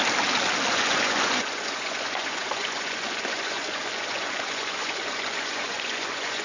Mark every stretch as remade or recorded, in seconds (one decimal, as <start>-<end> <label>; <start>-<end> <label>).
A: 0.0-0.7 recorded; 0.7-6.4 remade